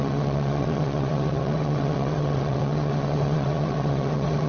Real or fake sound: fake